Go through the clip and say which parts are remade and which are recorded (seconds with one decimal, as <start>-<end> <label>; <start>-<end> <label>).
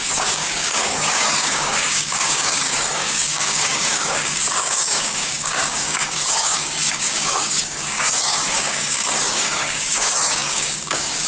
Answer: 0.0-11.3 remade